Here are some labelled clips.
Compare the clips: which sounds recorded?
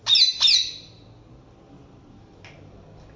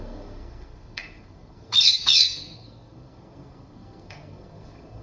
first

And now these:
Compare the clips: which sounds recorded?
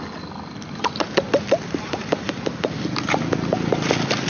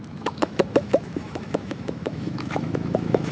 first